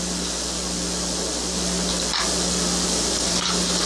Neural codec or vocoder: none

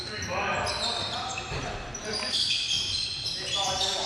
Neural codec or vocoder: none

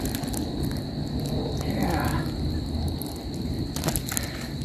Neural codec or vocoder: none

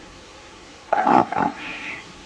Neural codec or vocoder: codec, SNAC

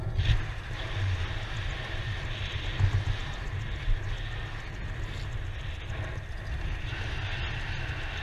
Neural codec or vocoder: none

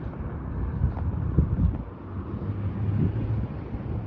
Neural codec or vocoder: none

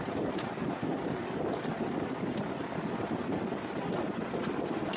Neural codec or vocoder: none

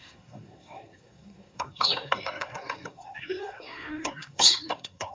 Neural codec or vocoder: codec, SNAC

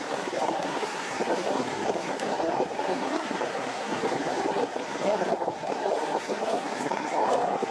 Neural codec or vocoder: codec, SNAC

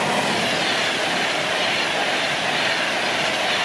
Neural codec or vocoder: none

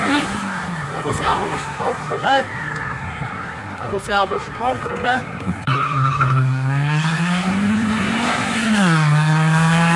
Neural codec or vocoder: codec, SNAC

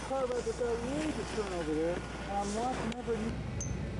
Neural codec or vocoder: none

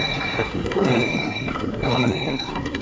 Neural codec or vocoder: codec, SNAC